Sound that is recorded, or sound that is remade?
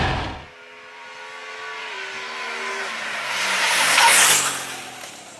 recorded